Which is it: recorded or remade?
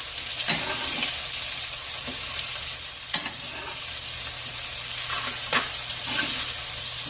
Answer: recorded